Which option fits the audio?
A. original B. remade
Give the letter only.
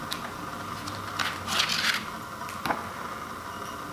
A